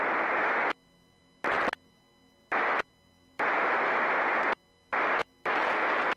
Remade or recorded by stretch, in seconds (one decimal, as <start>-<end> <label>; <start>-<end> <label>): 0.0-6.2 recorded